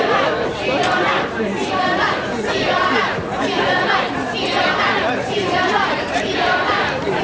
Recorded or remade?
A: remade